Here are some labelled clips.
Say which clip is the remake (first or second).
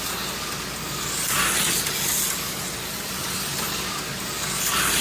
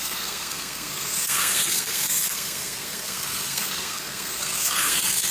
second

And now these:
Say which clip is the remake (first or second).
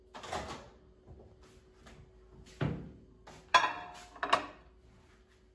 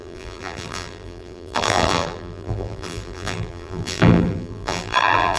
second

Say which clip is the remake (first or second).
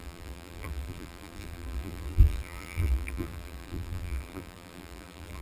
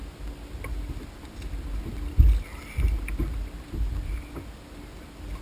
first